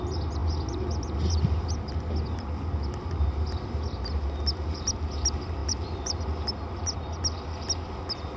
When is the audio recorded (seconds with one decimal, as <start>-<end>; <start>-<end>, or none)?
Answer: 0.0-5.6; 6.5-8.4